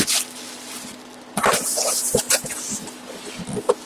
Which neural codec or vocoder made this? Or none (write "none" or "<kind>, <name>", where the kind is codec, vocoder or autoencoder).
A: none